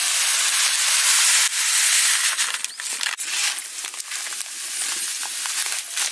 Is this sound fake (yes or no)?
no